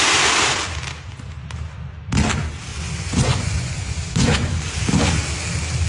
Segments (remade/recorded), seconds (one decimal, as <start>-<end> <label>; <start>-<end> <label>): 0.0-2.7 recorded; 2.7-4.7 remade; 4.7-5.9 recorded